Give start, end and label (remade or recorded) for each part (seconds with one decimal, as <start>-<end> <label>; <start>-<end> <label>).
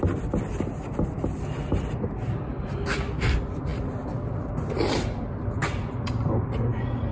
0.0-7.1 recorded